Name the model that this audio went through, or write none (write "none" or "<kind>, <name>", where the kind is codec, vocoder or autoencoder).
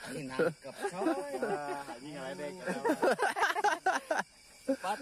none